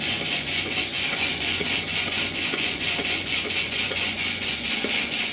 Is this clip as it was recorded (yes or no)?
no